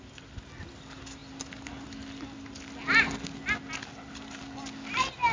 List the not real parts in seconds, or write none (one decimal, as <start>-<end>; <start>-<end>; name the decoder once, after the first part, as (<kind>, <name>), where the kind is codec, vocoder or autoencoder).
none